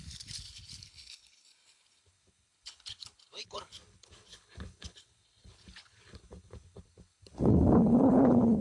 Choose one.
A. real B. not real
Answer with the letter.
B